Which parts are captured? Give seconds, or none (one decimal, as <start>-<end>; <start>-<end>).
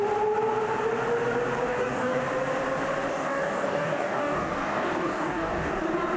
0.0-1.7; 2.2-3.1; 5.7-6.2